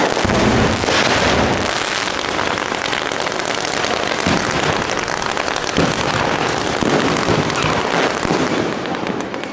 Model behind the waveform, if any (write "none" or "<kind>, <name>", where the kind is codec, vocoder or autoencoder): none